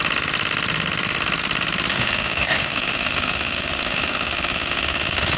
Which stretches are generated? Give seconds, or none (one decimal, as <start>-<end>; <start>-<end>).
1.9-5.4